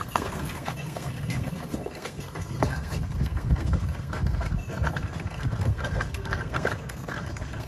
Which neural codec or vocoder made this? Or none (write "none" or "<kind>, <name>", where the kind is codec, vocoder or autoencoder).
codec, SNAC